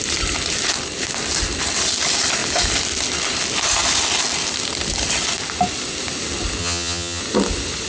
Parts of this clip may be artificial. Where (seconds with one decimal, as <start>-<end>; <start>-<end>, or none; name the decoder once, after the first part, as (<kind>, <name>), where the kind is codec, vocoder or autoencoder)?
6.6-7.2 (vocoder, HiFi-GAN)